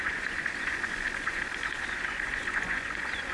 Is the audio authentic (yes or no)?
no